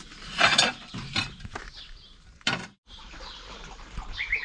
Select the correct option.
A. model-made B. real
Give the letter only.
A